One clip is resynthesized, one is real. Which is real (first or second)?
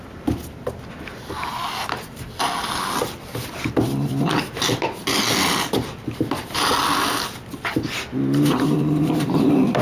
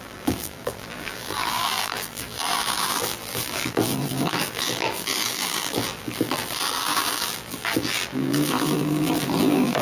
first